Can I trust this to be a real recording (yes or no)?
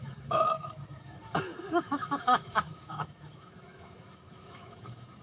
no